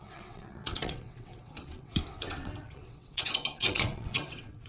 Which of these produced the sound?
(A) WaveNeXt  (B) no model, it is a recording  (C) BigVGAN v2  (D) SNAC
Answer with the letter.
A